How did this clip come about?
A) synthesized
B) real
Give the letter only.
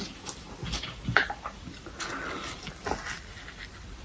B